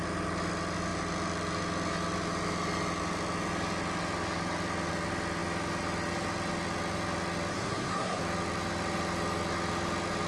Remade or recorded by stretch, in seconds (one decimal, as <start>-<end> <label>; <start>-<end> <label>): 0.0-7.5 recorded; 7.5-8.2 remade; 8.2-10.3 recorded